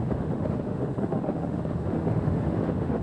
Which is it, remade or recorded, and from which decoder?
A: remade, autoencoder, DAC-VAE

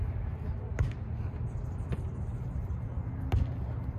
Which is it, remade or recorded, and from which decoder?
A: recorded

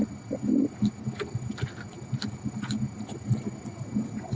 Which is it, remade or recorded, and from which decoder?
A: recorded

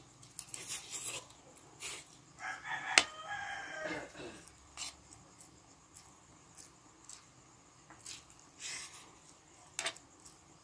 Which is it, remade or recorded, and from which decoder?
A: recorded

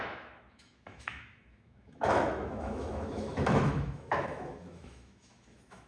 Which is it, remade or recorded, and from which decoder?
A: remade, autoencoder, DAC-VAE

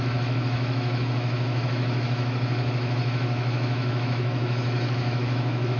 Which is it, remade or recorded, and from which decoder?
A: remade, autoencoder, DAC-VAE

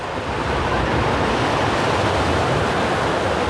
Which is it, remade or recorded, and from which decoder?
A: recorded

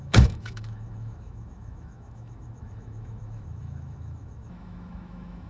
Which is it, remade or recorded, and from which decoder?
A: remade, autoencoder, DAC-VAE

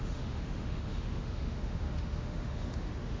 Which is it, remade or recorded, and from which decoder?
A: remade, autoencoder, DAC-VAE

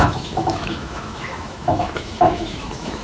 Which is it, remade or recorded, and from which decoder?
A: remade, autoencoder, DAC-VAE